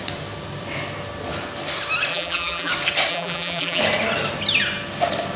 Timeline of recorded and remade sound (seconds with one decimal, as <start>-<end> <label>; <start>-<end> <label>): 0.0-2.1 recorded; 2.1-2.7 remade; 2.7-3.1 recorded; 3.1-3.8 remade; 3.8-5.4 recorded